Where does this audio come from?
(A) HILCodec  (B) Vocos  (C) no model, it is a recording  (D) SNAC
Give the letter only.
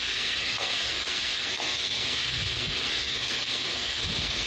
D